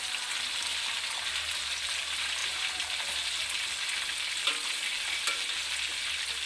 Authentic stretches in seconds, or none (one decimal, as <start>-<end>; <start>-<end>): 0.0-6.5